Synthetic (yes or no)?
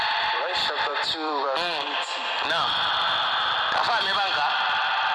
yes